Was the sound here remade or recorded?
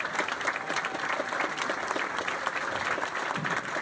remade